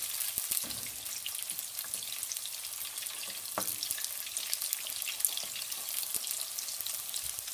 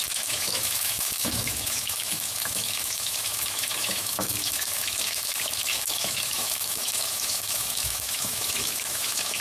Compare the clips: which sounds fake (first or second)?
second